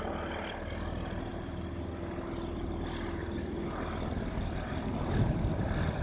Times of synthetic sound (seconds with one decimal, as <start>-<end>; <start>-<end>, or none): none